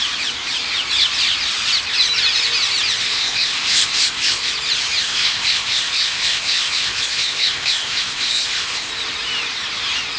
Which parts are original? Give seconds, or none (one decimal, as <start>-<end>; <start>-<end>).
0.0-3.0; 4.5-5.0; 8.9-10.2